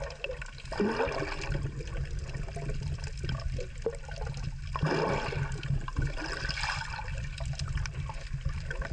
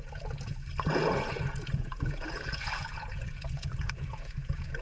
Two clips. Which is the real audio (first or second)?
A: first